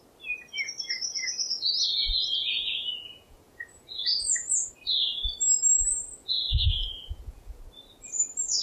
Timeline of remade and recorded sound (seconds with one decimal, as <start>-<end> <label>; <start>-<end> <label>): 0.0-1.9 recorded; 1.9-4.7 remade; 4.7-6.2 recorded; 6.2-7.6 remade; 7.6-8.6 recorded